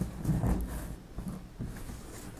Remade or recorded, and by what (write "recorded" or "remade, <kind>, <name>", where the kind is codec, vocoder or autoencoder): recorded